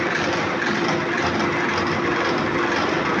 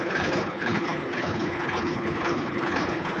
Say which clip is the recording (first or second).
first